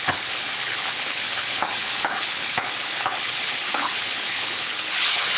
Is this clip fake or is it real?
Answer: fake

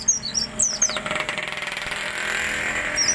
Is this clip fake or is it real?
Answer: real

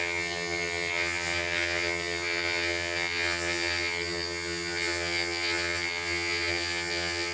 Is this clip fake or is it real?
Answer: fake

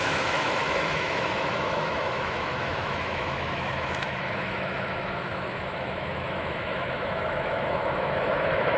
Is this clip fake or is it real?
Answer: fake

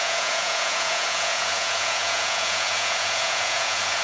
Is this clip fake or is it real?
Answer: fake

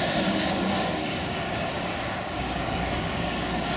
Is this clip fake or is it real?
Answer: fake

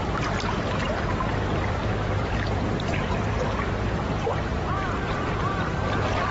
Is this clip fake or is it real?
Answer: fake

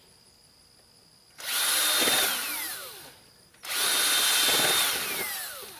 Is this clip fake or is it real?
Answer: real